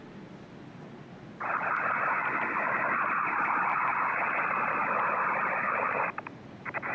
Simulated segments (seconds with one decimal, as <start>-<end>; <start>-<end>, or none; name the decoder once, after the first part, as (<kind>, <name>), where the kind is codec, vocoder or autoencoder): none